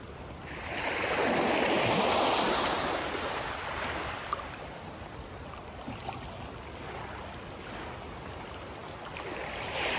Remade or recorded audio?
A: recorded